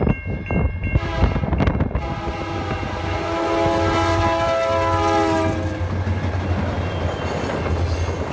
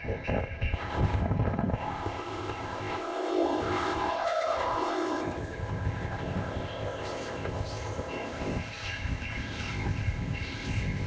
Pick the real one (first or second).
first